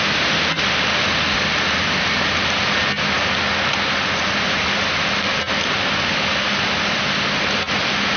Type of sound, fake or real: real